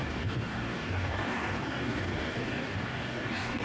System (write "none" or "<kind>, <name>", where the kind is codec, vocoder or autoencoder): codec, DAC